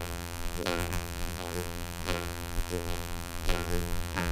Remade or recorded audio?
remade